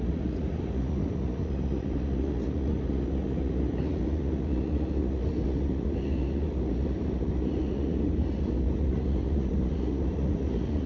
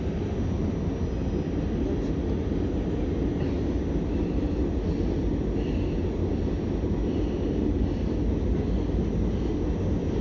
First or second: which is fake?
first